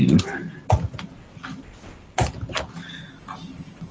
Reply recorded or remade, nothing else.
recorded